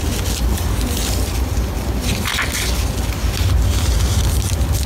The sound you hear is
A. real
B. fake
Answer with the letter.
A